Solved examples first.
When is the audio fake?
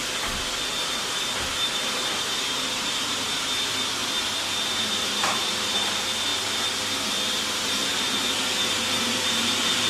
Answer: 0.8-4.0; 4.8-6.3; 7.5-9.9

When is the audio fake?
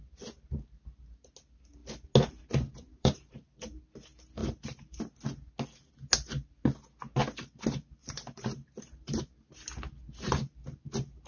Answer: 2.9-3.8; 4.4-5.0; 8.0-9.2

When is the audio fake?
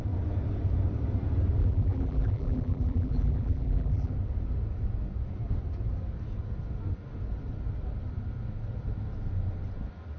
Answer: 1.6-4.1